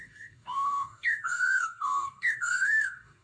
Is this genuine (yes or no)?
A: no